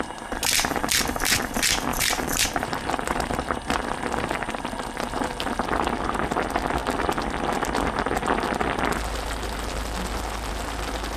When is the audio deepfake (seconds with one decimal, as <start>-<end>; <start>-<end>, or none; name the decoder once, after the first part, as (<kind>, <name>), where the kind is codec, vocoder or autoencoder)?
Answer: 1.9-3.5 (vocoder, BigVGAN v2)